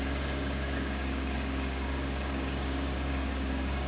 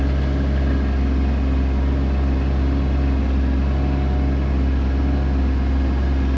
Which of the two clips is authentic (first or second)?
second